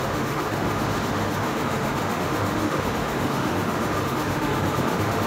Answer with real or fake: fake